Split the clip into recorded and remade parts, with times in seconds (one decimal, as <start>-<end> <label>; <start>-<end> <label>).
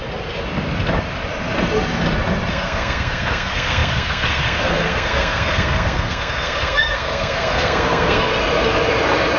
0.0-2.5 recorded; 2.5-8.3 remade; 8.3-9.4 recorded